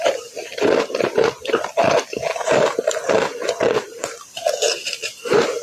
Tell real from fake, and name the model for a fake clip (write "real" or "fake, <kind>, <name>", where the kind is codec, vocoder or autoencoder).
fake, vocoder, BigVGAN v2